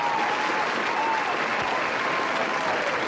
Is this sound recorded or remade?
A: recorded